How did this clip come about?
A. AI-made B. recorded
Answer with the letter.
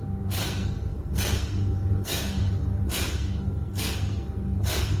A